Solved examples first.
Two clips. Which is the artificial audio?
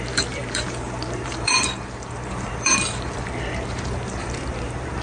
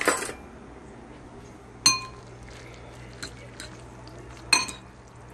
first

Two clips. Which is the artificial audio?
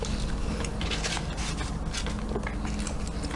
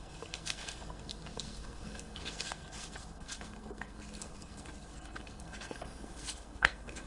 second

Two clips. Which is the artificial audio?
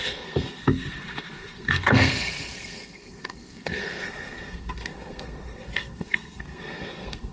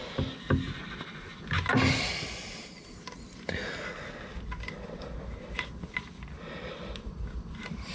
first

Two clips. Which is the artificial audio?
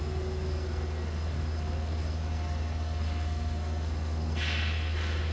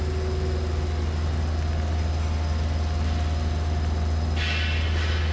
first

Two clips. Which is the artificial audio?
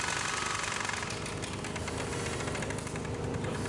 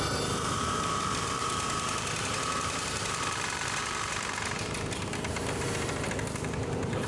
second